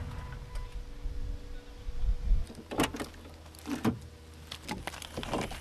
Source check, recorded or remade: recorded